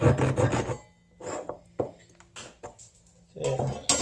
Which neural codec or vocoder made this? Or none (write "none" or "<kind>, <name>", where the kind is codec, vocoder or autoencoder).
none